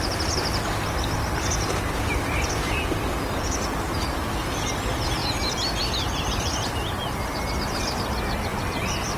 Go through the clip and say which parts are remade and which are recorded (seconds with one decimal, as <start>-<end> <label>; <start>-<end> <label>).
0.0-9.2 recorded